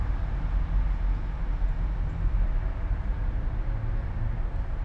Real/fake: real